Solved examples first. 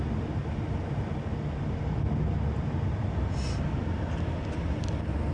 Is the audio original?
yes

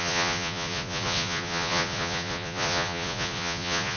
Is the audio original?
no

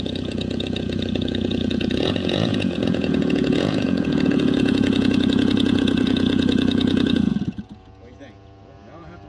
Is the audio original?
no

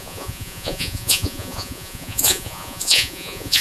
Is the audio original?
no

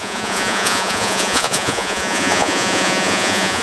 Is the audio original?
no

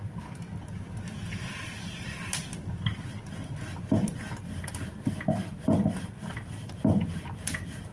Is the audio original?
yes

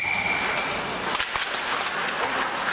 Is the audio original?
yes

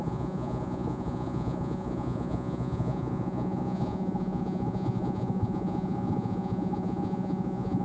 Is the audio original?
no